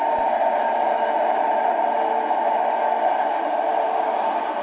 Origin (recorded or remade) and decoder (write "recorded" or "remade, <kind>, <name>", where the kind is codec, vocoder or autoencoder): recorded